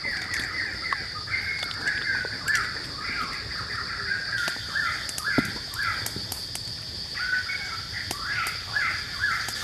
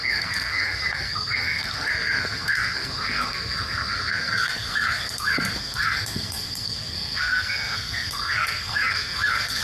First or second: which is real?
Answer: first